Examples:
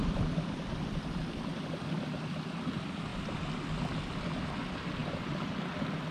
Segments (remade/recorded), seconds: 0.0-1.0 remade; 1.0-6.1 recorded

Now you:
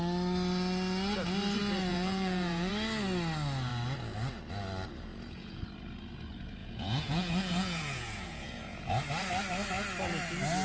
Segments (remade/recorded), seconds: 0.0-1.9 recorded; 1.9-2.7 remade; 2.7-5.1 recorded; 5.1-5.6 remade; 5.6-6.6 recorded; 6.6-8.9 remade; 8.9-10.6 recorded

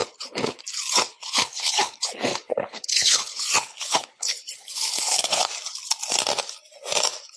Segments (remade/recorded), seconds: 0.0-0.6 remade; 0.6-1.1 recorded; 1.1-5.5 remade; 5.5-7.4 recorded